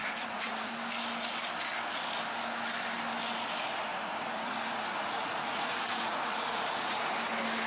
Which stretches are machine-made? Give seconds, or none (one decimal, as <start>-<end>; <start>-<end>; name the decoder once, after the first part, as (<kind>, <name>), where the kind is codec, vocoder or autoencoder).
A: 0.0-0.7 (vocoder, Vocos); 3.9-7.0